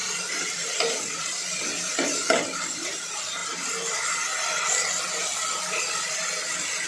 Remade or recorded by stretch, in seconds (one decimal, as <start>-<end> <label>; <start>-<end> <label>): 0.0-1.2 remade; 1.2-6.9 recorded